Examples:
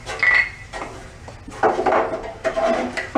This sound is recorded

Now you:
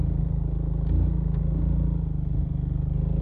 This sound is recorded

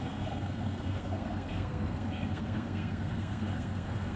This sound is remade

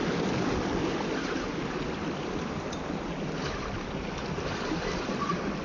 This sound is recorded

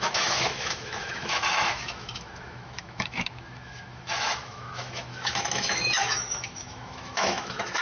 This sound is remade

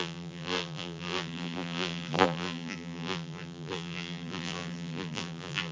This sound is remade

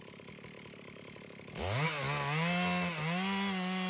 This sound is recorded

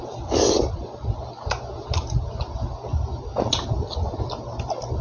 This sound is recorded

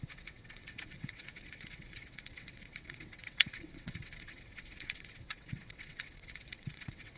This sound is remade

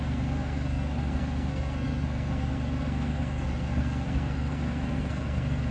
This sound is remade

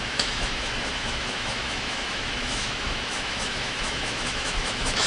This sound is remade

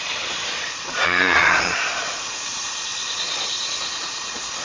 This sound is remade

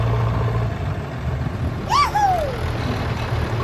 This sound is recorded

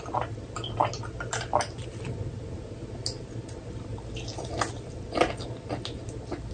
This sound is recorded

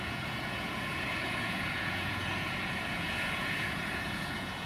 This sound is remade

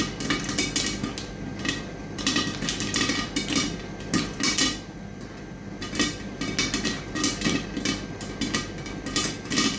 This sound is recorded